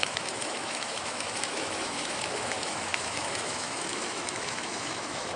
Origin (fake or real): fake